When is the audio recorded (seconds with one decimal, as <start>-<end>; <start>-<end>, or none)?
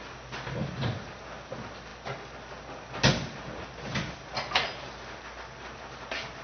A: 0.0-0.6; 1.1-6.4